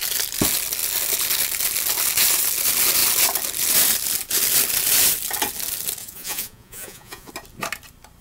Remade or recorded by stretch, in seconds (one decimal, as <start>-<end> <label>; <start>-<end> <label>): 0.0-6.0 recorded; 6.0-7.3 remade; 7.3-8.2 recorded